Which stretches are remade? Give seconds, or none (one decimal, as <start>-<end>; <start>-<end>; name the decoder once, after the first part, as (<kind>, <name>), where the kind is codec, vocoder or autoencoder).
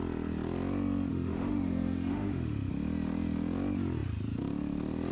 1.1-2.7 (autoencoder, DAC-VAE)